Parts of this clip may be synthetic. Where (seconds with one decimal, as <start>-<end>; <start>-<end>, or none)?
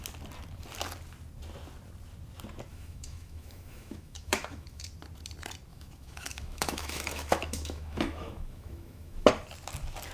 2.7-4.9; 5.7-9.3